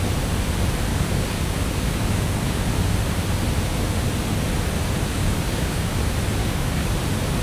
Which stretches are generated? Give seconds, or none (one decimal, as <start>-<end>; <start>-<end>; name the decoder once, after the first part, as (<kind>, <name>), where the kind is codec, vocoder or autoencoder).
0.9-2.7 (codec, DAC); 5.1-6.0; 6.4-6.9